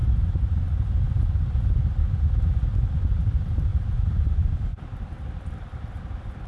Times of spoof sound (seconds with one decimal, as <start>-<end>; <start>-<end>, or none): 0.0-1.7; 3.7-4.3